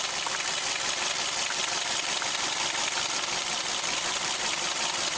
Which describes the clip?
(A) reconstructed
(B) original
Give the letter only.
B